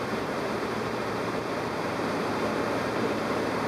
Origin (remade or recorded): remade